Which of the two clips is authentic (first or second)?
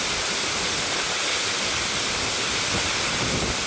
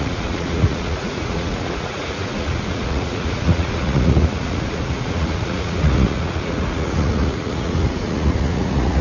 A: first